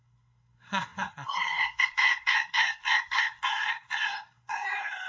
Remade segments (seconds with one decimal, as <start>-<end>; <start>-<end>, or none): 0.0-5.1